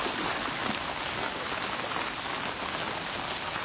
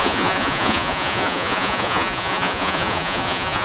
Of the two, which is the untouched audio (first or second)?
first